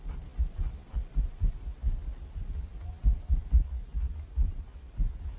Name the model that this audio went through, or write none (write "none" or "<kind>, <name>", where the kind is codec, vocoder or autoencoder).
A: none